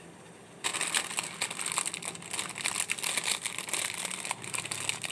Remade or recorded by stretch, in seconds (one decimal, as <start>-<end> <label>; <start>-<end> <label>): 0.0-5.1 recorded